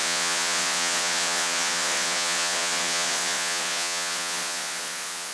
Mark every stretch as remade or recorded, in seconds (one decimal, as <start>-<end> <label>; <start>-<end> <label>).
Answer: 0.0-5.3 remade